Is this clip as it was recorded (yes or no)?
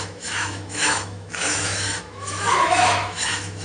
no